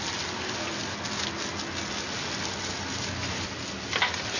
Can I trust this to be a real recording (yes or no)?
yes